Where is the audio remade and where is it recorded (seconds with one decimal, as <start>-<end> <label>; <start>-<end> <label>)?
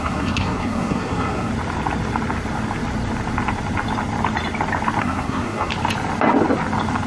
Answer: 0.0-1.5 remade; 1.5-5.0 recorded; 5.0-5.7 remade; 5.7-7.1 recorded